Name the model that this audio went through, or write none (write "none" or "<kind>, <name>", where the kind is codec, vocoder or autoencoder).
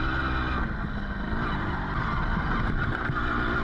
none